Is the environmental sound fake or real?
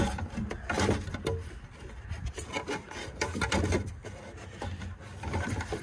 real